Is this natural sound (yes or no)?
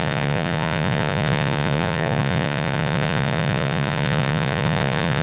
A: no